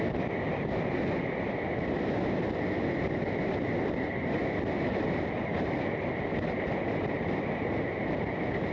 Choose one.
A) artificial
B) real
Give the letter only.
B